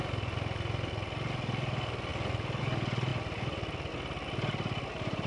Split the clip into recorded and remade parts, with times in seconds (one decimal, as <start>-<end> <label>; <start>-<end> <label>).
0.0-3.1 recorded; 3.1-3.9 remade; 3.9-5.3 recorded